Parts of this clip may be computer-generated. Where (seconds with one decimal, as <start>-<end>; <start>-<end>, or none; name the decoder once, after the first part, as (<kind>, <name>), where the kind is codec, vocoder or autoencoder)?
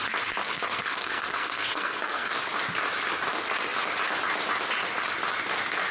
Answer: 0.4-2.3 (codec, SNAC)